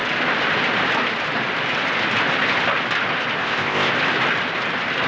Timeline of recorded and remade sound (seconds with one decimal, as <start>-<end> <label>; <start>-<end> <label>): 0.0-3.4 recorded; 3.4-3.9 remade; 3.9-5.1 recorded